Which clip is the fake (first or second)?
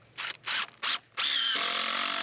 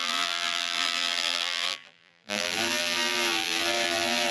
second